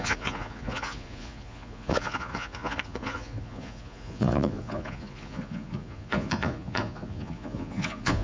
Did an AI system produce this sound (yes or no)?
yes